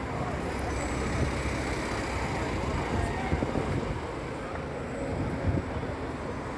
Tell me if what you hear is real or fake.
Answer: real